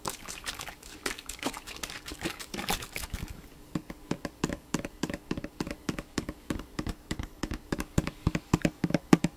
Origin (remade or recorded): remade